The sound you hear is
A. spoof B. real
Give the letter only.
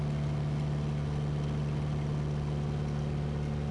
B